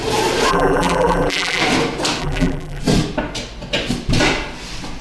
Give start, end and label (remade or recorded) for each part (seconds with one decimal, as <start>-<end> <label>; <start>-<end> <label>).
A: 0.0-0.5 recorded; 0.5-1.6 remade; 1.6-2.2 recorded; 2.2-2.8 remade; 2.8-5.0 recorded